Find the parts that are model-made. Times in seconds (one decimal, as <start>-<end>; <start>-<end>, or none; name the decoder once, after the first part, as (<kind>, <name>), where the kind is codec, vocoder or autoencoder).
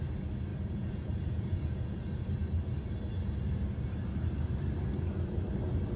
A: 0.5-2.0 (vocoder, Vocos)